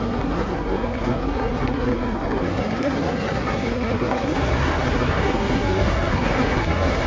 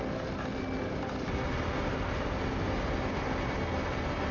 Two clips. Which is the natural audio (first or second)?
second